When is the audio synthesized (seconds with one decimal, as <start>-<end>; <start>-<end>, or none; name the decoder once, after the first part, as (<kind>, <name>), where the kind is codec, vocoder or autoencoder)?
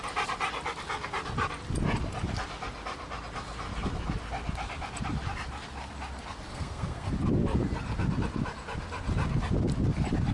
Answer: 6.5-7.1 (codec, SNAC)